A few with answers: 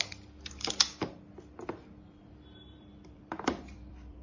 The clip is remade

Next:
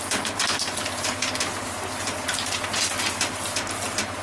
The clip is remade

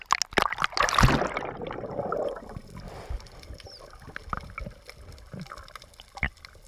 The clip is recorded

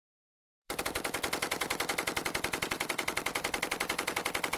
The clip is remade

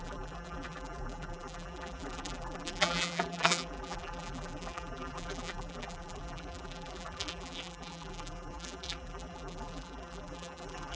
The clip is remade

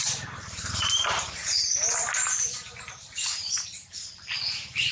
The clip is remade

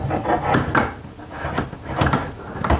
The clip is recorded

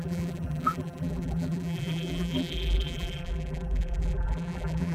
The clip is remade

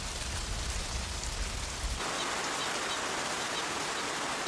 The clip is recorded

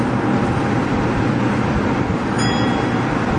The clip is remade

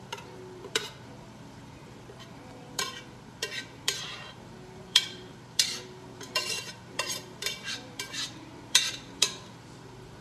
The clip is remade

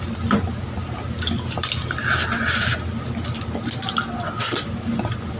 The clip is recorded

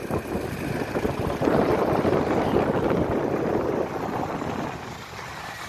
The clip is recorded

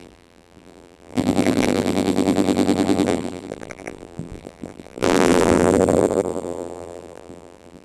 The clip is remade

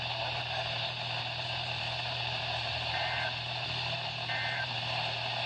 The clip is remade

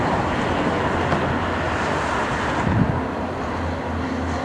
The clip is recorded